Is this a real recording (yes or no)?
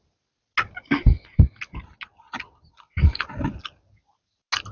yes